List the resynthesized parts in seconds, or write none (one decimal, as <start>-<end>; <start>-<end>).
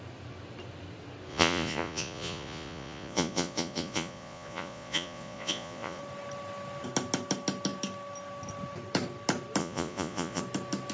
1.3-6.0; 9.6-10.4